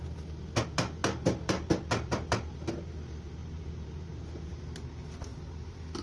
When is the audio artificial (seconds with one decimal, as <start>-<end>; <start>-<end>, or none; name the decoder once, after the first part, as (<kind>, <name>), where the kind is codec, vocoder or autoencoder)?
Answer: 3.4-4.6 (vocoder, BigVGAN v2)